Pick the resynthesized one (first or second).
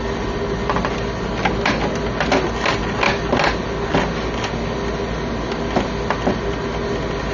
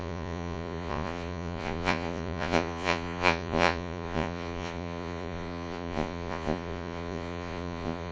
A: second